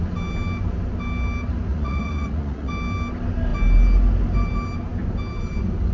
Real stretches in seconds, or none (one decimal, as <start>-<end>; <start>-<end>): 0.0-1.7; 2.7-5.9